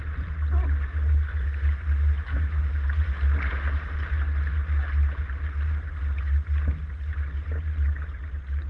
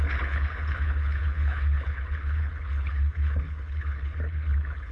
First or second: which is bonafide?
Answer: first